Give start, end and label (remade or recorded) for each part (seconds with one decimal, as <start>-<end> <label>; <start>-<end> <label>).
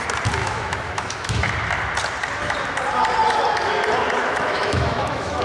0.0-0.4 recorded; 0.4-1.5 remade; 1.5-4.2 recorded; 4.2-5.4 remade